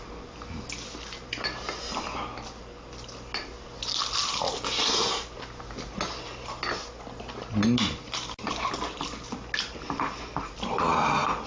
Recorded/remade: recorded